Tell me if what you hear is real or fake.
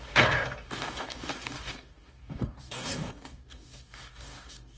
fake